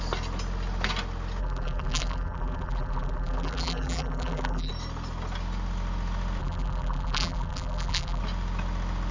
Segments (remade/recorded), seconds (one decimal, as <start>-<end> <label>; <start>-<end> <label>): 0.0-1.4 recorded; 1.4-4.7 remade; 4.7-6.4 recorded; 6.4-8.2 remade; 8.2-9.1 recorded